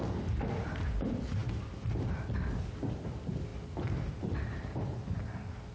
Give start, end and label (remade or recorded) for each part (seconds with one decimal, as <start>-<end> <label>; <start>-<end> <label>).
0.0-5.7 recorded